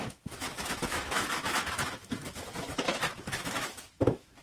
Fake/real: fake